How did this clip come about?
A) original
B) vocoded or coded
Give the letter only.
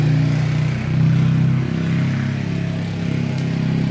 A